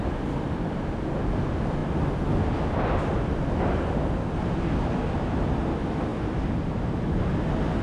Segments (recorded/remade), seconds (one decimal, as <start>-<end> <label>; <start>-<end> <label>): 0.0-7.8 recorded